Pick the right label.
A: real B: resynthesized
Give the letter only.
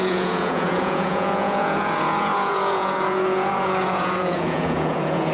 B